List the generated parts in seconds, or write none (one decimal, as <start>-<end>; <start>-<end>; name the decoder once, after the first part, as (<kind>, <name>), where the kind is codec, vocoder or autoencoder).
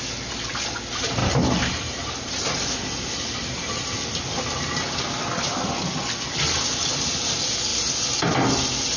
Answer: 1.2-2.1 (vocoder, BigVGAN v2)